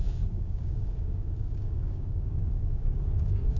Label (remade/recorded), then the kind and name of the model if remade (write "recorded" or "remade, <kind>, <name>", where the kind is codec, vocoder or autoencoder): remade, codec, DAC